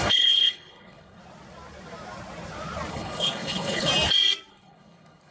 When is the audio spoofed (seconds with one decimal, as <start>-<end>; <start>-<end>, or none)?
0.0-1.2; 2.9-3.9; 4.5-5.3